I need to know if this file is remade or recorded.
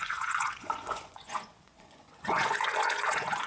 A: remade